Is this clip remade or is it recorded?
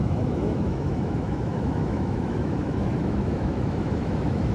remade